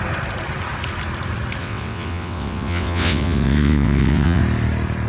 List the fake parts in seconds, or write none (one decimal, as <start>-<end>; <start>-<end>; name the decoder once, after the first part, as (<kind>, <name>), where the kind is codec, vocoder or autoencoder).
1.6-4.4 (vocoder, WaveNeXt)